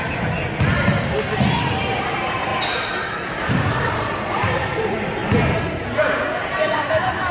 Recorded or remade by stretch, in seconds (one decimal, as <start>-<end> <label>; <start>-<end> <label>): 0.0-0.4 remade; 0.4-2.0 recorded; 2.0-2.5 remade; 2.5-3.5 recorded; 3.5-5.2 remade; 5.2-6.1 recorded; 6.1-7.3 remade